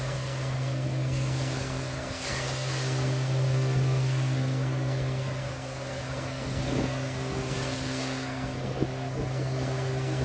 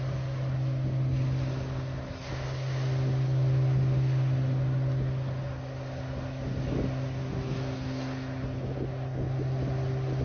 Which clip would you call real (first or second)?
second